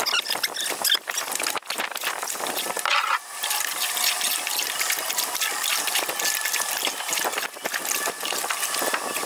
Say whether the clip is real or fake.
real